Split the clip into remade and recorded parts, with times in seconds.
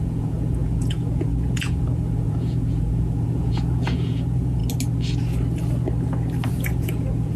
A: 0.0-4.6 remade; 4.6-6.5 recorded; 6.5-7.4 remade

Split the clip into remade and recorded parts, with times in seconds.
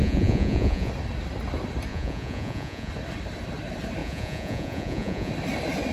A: 0.0-0.9 remade; 0.9-1.9 recorded; 1.9-2.9 remade; 2.9-4.0 recorded; 4.0-5.3 remade; 5.3-5.9 recorded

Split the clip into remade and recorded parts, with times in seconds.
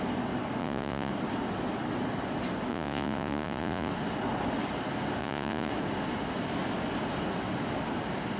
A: 0.0-0.6 recorded; 0.6-1.1 remade; 1.1-2.7 recorded; 2.7-3.9 remade; 3.9-5.2 recorded; 5.2-5.7 remade; 5.7-8.4 recorded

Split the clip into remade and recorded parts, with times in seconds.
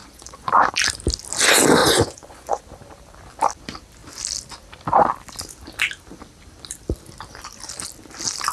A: 0.0-0.7 remade; 0.7-1.8 recorded; 1.8-2.6 remade; 2.6-8.5 recorded